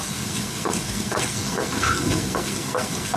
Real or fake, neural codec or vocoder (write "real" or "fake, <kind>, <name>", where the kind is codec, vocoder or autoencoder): fake, codec, SNAC